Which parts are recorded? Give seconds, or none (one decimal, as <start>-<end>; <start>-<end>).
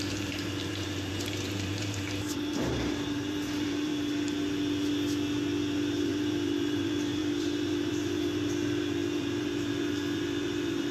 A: 3.9-6.0